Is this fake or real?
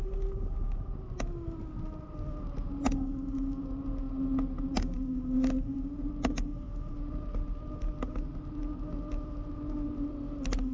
real